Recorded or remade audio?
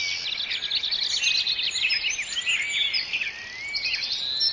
recorded